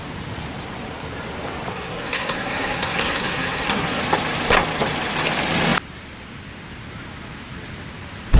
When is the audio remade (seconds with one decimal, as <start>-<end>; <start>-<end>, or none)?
1.7-4.0